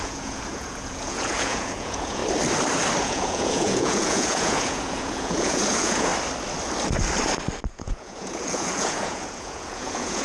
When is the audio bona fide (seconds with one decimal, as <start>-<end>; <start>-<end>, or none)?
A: 2.2-3.0; 6.1-7.7